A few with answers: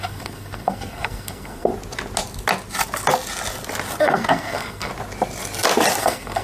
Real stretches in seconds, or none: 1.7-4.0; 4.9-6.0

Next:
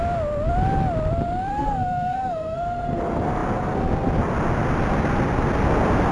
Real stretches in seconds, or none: 0.0-1.5; 3.0-6.1

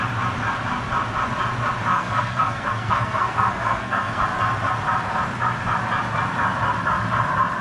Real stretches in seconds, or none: 0.0-1.9; 4.2-7.6

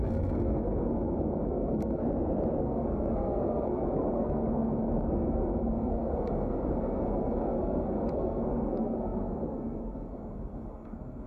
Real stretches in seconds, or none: 2.0-2.6

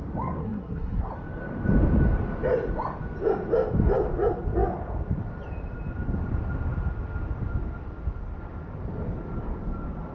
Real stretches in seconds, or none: 0.0-0.4; 1.1-10.1

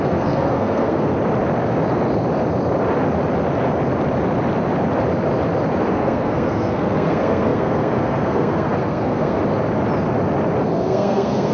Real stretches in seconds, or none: 1.1-5.9; 9.4-10.6

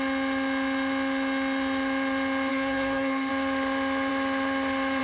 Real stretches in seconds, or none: 0.0-2.5; 3.3-5.0